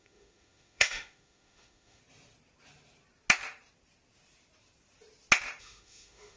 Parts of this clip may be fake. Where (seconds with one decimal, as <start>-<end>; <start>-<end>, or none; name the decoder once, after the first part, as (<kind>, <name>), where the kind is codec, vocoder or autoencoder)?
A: 0.0-2.0 (autoencoder, DAC-VAE); 5.6-6.4